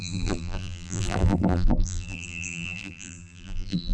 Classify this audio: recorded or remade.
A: remade